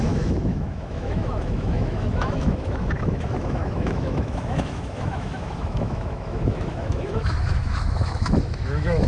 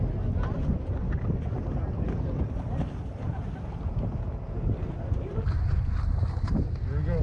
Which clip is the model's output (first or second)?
first